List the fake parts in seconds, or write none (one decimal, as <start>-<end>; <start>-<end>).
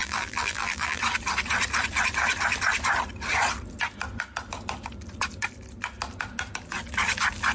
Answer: 0.0-1.0